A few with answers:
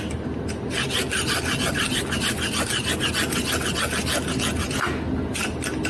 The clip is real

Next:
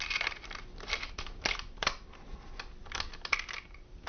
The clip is real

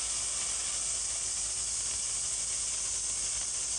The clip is real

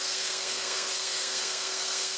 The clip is fake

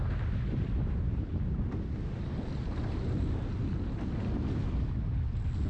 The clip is real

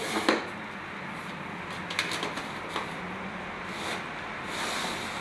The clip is real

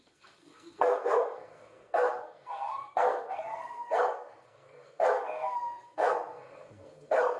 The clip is fake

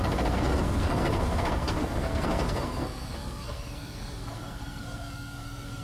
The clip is fake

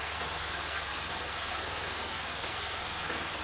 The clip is fake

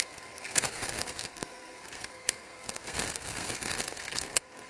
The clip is fake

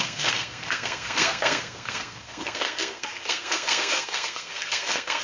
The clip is fake